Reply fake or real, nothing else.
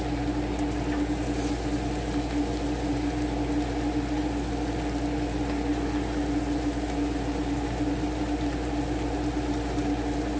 real